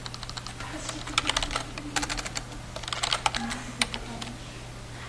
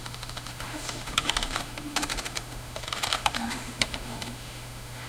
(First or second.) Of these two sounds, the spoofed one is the second